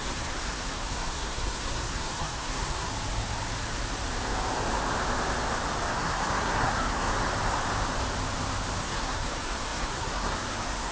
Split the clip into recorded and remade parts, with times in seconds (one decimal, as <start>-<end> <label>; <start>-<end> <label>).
0.0-2.9 remade; 2.9-5.9 recorded; 5.9-7.1 remade; 7.1-8.8 recorded; 8.8-10.9 remade